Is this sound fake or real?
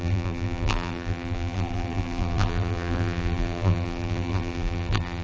fake